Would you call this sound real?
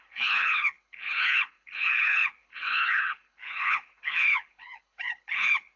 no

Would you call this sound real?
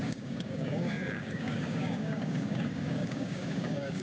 no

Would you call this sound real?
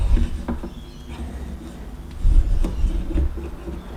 yes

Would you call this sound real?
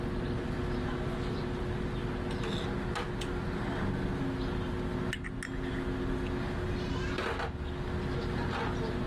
yes